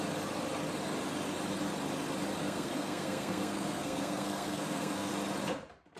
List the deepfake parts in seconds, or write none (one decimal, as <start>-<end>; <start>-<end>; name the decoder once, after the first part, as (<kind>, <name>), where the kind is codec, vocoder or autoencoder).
2.4-5.1 (codec, SNAC)